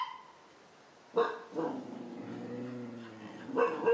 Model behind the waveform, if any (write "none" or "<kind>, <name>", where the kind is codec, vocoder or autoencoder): none